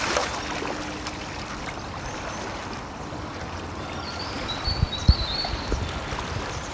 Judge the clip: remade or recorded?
remade